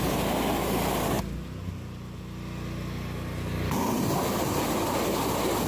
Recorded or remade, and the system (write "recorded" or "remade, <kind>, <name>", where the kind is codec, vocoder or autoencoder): recorded